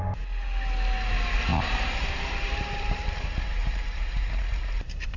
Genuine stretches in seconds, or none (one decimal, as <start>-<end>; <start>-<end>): 0.0-1.5; 4.6-5.2